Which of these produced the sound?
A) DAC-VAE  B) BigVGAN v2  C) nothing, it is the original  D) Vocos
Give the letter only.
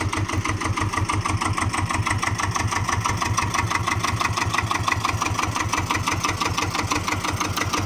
C